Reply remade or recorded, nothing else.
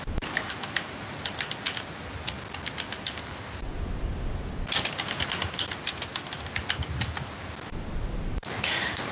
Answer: recorded